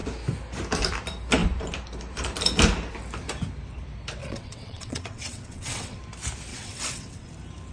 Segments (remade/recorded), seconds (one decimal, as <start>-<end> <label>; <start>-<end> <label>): 0.0-4.2 recorded; 4.2-6.0 remade; 6.0-6.5 recorded; 6.5-7.3 remade; 7.3-7.7 recorded